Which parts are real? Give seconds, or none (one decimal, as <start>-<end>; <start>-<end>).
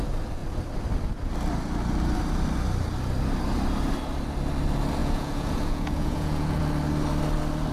0.0-5.0; 6.6-7.7